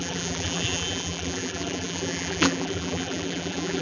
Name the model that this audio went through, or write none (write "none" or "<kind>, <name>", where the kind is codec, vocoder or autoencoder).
vocoder, BigVGAN v2